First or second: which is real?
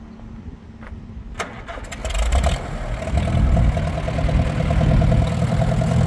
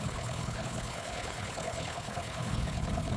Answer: first